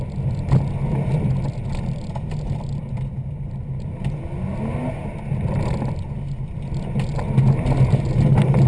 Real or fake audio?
real